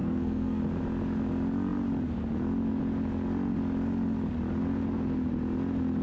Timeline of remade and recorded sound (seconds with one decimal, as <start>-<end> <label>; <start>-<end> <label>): 0.0-0.6 remade; 0.6-6.0 recorded